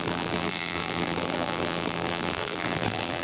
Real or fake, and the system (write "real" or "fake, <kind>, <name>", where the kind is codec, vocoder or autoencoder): fake, vocoder, BigVGAN v2